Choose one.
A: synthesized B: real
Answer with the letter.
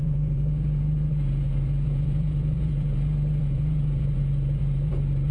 A